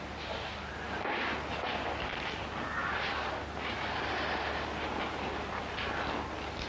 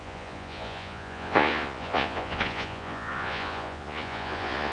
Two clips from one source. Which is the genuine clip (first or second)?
first